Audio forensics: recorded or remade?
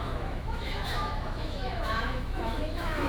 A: remade